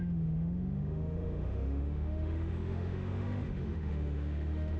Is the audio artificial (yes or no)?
yes